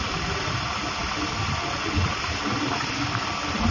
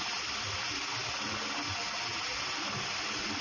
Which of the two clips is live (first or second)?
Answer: second